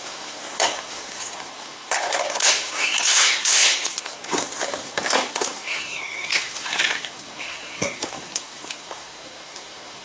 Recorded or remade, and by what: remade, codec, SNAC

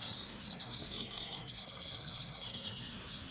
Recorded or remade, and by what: remade, codec, SNAC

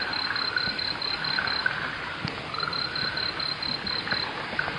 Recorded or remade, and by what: recorded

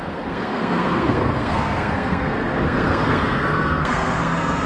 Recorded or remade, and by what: remade, codec, SNAC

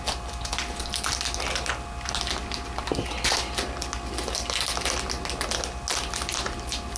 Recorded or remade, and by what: recorded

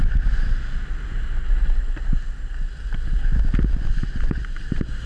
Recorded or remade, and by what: recorded